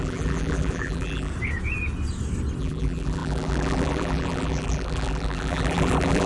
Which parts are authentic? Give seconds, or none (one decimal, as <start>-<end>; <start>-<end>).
1.3-2.6